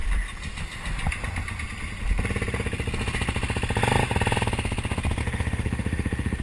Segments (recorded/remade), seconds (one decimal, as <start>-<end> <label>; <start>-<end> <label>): 0.0-5.2 recorded; 5.2-6.4 remade